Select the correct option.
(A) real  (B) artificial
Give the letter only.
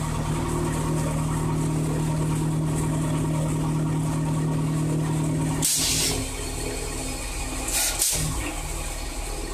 A